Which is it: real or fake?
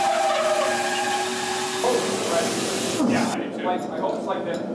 real